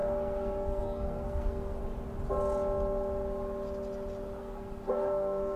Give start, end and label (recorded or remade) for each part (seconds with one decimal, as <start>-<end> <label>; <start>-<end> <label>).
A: 0.0-1.8 remade; 1.8-4.4 recorded; 4.4-5.6 remade